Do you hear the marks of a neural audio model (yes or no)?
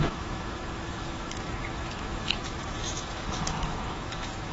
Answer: yes